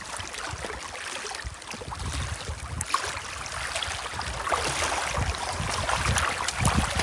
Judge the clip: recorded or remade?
recorded